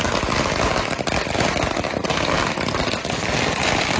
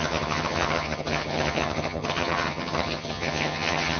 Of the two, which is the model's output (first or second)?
second